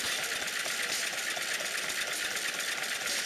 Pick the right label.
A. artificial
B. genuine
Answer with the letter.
B